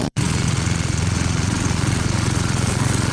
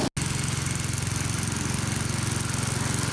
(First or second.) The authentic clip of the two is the second